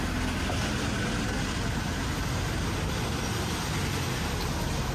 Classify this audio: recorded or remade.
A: recorded